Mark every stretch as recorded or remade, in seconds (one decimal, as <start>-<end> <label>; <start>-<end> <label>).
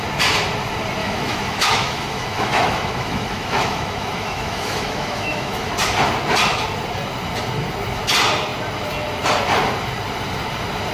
0.0-1.0 recorded; 1.0-5.7 remade; 5.7-10.9 recorded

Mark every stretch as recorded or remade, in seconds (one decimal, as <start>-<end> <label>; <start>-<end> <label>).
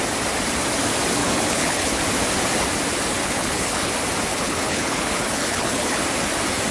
0.0-1.2 recorded; 1.2-2.0 remade; 2.0-3.2 recorded; 3.2-3.9 remade; 3.9-4.3 recorded; 4.3-6.0 remade; 6.0-6.7 recorded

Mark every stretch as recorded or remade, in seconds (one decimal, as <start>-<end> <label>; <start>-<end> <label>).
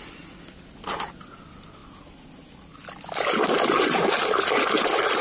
0.0-5.2 recorded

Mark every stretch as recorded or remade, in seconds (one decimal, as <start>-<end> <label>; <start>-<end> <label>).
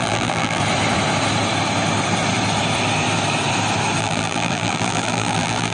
0.0-0.6 remade; 0.6-4.0 recorded; 4.0-5.7 remade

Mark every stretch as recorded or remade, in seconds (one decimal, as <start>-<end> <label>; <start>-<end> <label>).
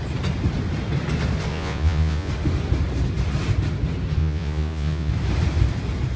0.0-1.5 recorded; 1.5-2.3 remade; 2.3-4.2 recorded; 4.2-5.1 remade; 5.1-6.2 recorded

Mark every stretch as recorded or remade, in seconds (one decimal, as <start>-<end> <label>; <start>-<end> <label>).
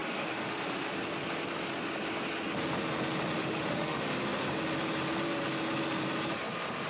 0.0-0.9 remade; 0.9-3.4 recorded; 3.4-4.2 remade; 4.2-6.9 recorded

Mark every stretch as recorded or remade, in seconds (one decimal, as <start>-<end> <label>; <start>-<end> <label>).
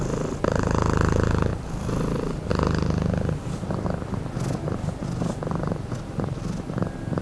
0.0-1.5 recorded; 1.5-2.5 remade; 2.5-5.0 recorded; 5.0-5.6 remade; 5.6-7.2 recorded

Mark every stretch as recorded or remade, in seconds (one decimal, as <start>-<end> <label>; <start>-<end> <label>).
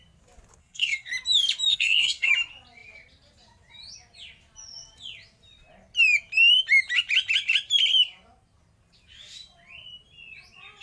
0.0-0.6 recorded; 0.6-1.1 remade; 1.1-1.7 recorded; 1.7-2.3 remade; 2.3-10.8 recorded